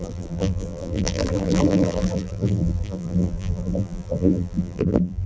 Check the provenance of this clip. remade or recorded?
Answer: remade